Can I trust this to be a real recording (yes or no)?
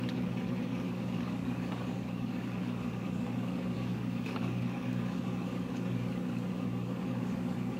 no